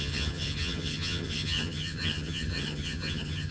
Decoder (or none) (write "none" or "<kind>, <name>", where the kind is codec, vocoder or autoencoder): vocoder, HiFi-GAN